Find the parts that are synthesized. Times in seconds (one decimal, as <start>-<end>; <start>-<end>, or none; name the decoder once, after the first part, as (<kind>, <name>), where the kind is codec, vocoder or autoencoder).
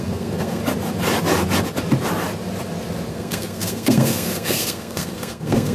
0.0-0.6 (codec, SNAC); 3.1-5.7